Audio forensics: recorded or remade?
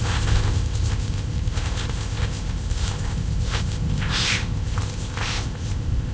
remade